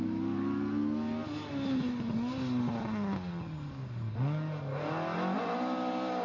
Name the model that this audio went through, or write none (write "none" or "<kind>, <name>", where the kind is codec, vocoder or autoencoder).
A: none